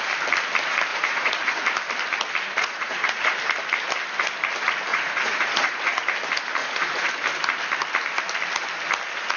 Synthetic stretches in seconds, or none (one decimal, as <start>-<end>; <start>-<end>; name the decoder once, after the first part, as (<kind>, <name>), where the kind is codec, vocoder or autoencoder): 0.9-1.5 (vocoder, Vocos); 2.6-3.3; 4.9-6.0; 6.6-7.1